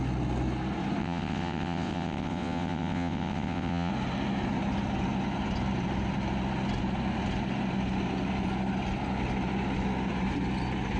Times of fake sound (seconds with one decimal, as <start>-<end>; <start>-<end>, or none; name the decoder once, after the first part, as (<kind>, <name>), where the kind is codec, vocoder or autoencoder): 1.0-3.9 (vocoder, WaveNeXt)